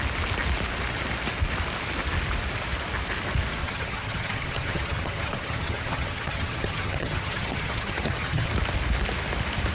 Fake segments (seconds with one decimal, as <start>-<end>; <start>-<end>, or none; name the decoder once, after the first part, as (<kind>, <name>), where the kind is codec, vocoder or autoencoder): 3.6-8.5 (vocoder, HiFi-GAN)